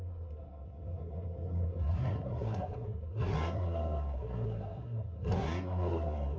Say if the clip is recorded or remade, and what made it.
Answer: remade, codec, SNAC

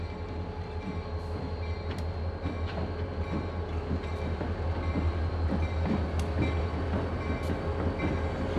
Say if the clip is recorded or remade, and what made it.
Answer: recorded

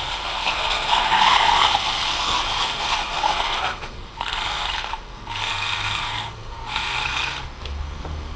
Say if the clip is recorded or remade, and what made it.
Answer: remade, codec, SNAC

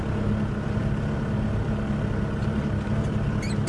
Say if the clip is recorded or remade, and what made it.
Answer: recorded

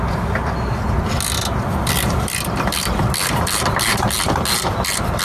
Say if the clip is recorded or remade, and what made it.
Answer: recorded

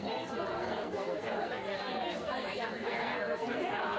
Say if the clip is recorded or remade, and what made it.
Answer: remade, codec, SNAC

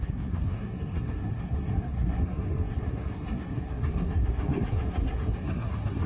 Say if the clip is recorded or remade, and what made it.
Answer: remade, codec, SNAC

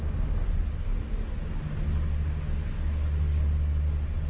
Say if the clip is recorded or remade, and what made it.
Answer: recorded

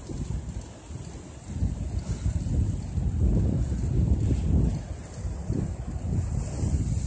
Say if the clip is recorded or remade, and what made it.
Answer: recorded